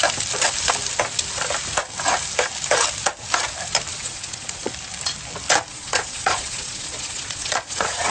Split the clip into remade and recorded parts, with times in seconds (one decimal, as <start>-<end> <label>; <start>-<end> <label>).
0.0-3.9 recorded; 3.9-4.7 remade; 4.7-5.7 recorded; 5.7-8.1 remade